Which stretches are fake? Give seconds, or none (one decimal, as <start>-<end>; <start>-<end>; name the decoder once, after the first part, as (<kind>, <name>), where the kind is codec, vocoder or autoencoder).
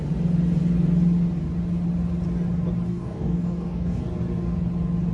2.9-4.0 (codec, DAC)